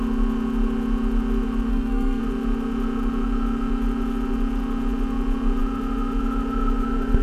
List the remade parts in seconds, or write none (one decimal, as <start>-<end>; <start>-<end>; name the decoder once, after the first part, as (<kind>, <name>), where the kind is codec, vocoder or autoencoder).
1.7-2.2 (codec, SNAC)

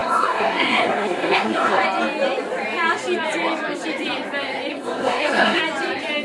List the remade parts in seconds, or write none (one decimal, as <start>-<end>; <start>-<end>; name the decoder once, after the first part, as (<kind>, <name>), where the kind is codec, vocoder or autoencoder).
0.0-1.8 (codec, SNAC); 4.7-5.6

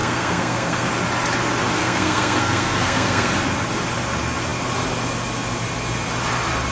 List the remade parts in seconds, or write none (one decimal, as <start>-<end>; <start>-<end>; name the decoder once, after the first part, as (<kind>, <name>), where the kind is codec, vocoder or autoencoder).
0.0-0.9 (codec, SNAC); 1.8-3.3

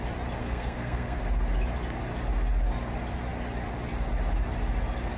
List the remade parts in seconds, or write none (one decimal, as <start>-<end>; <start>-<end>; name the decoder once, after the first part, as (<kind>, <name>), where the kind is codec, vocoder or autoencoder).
0.4-1.2 (codec, SNAC)